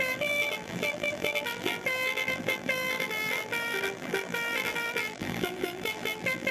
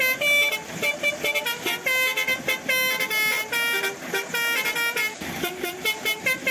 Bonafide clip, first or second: second